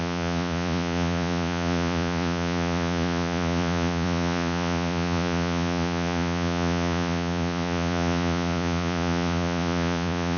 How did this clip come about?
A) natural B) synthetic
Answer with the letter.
B